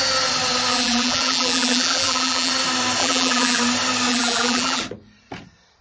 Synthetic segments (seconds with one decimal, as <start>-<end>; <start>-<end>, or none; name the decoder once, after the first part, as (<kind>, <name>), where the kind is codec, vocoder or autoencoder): 0.7-2.5 (vocoder, BigVGAN v2); 3.0-3.6; 4.1-4.8